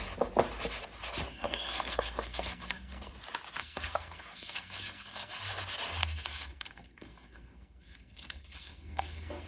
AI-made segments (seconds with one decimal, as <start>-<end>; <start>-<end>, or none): 1.3-3.1; 3.6-5.4; 6.0-9.5